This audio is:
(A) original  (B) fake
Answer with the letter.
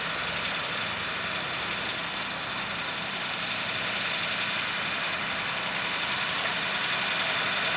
A